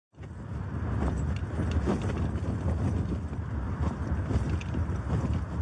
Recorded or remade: recorded